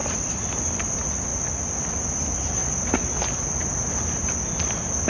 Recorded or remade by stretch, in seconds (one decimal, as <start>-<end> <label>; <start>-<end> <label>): 0.0-0.8 remade; 0.8-5.1 recorded